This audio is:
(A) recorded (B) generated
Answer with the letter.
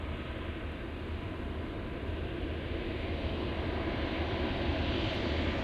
A